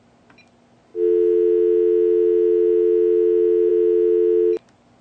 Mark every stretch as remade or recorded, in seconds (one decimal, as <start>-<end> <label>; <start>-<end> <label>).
0.0-5.0 recorded